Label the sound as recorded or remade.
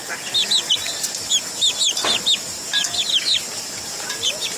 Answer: recorded